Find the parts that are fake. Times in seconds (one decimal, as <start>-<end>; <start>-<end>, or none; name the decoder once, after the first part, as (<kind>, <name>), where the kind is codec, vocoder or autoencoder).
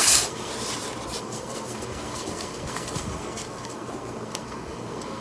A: 0.0-0.5 (codec, SNAC); 1.2-5.2